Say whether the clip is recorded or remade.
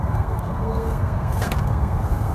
remade